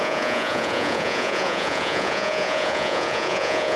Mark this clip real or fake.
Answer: fake